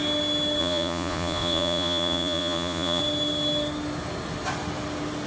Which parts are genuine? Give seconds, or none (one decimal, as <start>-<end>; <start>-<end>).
0.0-0.6; 3.0-5.3